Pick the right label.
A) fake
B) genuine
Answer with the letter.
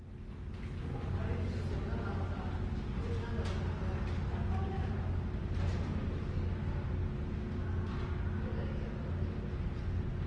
B